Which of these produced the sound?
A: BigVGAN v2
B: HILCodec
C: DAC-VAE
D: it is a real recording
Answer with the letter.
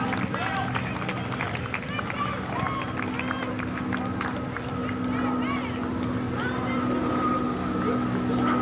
D